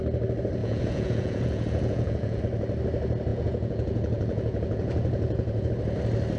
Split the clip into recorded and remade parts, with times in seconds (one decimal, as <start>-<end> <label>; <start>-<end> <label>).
0.0-0.6 recorded; 0.6-2.4 remade; 2.4-3.3 recorded; 3.3-5.7 remade; 5.7-6.4 recorded